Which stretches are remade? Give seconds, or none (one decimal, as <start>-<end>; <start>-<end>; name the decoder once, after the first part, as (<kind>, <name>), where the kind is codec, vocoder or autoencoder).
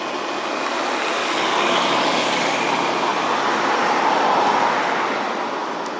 1.2-2.6 (codec, DAC)